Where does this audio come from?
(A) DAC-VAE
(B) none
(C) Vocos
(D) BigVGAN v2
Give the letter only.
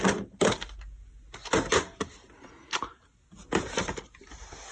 B